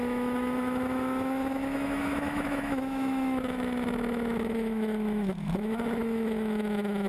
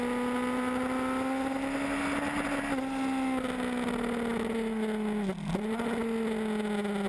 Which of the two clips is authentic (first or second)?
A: second